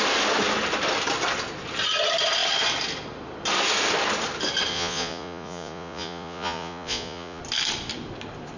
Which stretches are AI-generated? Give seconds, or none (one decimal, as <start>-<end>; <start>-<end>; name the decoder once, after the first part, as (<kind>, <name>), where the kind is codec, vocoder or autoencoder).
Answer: 4.7-7.4 (vocoder, Vocos)

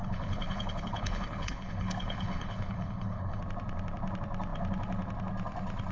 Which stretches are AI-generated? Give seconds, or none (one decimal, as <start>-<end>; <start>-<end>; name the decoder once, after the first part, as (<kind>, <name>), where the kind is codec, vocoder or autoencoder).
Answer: 0.0-3.4 (codec, HILCodec)